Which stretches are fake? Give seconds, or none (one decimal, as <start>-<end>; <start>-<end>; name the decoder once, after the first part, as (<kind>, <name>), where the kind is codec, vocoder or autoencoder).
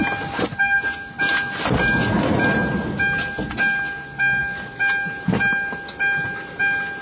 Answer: none